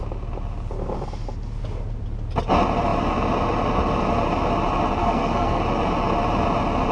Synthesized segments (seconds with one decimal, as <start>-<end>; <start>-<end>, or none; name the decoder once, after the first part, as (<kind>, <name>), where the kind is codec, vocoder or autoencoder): 5.0-5.6 (codec, SNAC)